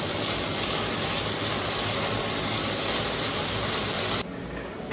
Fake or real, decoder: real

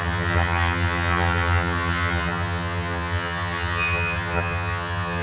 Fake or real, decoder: fake, vocoder, HiFi-GAN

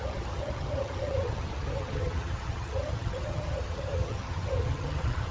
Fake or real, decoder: fake, vocoder, HiFi-GAN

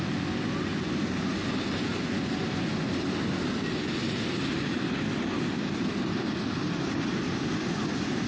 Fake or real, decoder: real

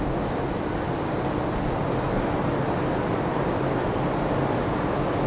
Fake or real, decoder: real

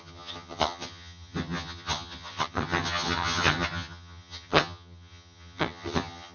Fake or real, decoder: fake, vocoder, HiFi-GAN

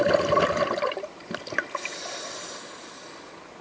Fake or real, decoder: real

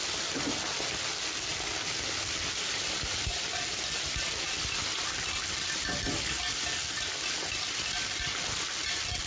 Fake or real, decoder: real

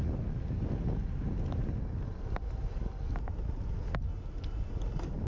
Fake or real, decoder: real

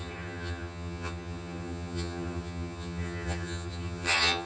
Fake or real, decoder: fake, vocoder, HiFi-GAN